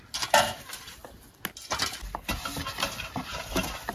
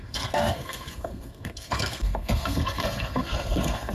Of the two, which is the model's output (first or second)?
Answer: second